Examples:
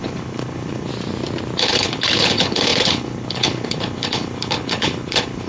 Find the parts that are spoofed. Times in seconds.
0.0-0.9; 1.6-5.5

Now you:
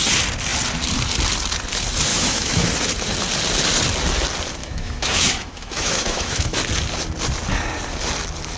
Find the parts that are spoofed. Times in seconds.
2.1-2.7; 4.6-6.6

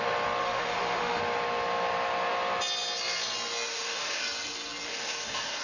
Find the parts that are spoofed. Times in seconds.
0.4-1.2; 3.7-4.2; 4.9-5.6